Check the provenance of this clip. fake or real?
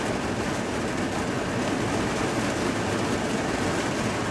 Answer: real